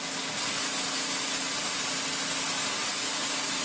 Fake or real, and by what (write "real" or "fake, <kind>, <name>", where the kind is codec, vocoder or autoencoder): real